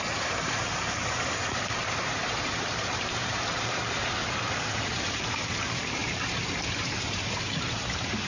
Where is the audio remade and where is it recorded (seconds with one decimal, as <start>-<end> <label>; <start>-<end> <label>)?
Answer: 0.0-8.3 remade